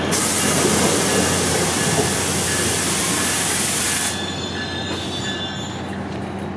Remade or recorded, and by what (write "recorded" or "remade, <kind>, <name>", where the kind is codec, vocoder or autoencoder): recorded